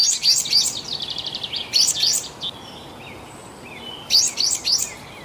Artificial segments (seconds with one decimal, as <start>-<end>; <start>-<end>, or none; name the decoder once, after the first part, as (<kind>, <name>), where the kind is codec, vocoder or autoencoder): 0.9-1.6 (vocoder, BigVGAN v2)